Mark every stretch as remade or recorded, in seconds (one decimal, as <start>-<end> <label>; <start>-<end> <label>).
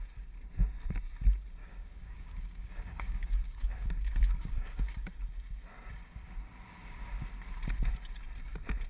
0.0-1.6 recorded; 1.6-5.1 remade; 5.1-8.9 recorded